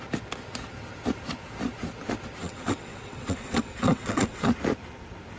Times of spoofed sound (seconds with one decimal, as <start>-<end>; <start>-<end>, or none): 2.4-4.5